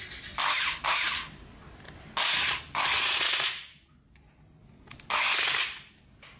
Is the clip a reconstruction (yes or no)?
no